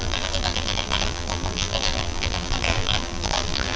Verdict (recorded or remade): remade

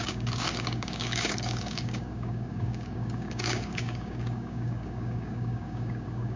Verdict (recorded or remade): remade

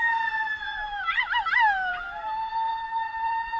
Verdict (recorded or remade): remade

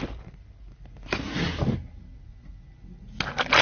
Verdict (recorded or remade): recorded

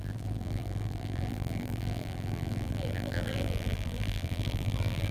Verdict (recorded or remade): remade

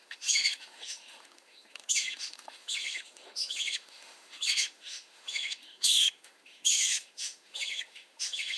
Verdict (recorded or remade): remade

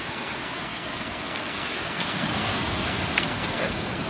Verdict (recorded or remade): remade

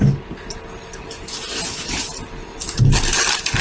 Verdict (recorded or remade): recorded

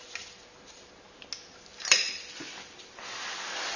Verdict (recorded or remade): recorded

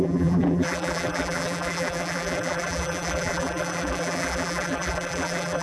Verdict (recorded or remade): remade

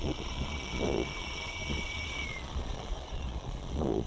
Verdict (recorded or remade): remade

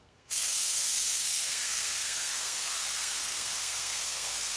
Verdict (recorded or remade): remade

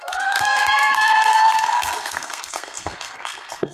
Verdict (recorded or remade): remade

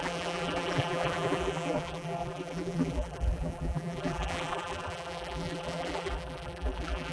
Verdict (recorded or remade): remade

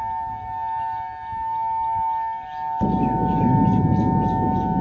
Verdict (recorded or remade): recorded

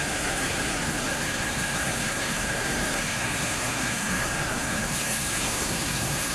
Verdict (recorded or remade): remade